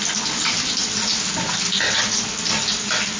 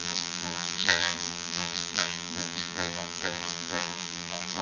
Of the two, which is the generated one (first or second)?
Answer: second